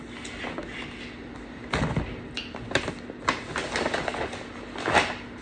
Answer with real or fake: real